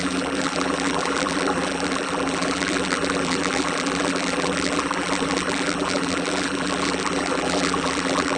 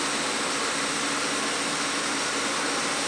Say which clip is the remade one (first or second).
first